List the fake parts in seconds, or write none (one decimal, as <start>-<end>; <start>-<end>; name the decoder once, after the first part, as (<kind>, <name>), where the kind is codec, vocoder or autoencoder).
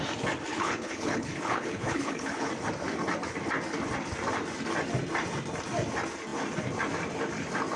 0.5-2.5 (codec, HILCodec)